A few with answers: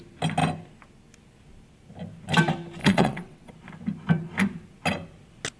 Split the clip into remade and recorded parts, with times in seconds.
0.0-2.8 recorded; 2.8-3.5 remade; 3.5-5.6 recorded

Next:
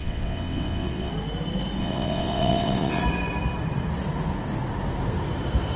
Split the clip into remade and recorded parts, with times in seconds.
0.0-1.1 remade; 1.1-1.8 recorded; 1.8-3.0 remade; 3.0-5.8 recorded